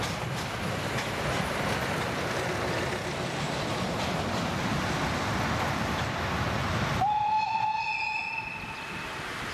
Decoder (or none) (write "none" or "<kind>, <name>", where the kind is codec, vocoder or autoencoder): none